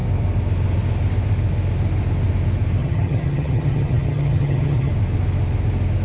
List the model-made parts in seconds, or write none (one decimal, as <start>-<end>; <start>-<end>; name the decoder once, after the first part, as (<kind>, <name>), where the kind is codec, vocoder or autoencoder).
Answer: 2.8-4.9 (vocoder, HiFi-GAN)